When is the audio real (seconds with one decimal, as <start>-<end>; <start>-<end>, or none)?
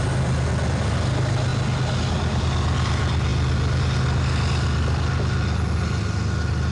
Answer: 0.0-6.7